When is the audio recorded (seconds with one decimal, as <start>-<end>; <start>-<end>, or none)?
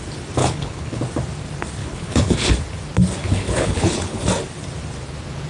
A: 0.0-0.4; 1.0-1.8; 2.5-3.2; 4.2-5.5